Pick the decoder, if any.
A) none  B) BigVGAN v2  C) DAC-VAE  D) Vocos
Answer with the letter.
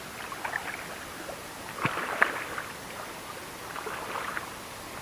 A